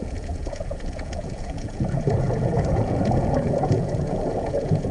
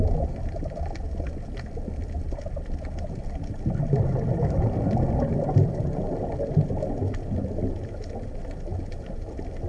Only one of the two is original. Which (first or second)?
second